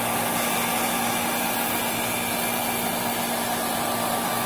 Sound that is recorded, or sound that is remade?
recorded